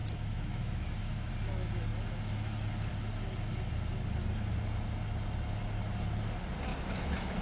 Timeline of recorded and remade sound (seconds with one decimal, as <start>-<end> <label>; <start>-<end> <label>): 0.0-1.3 remade; 1.3-6.7 recorded; 6.7-7.4 remade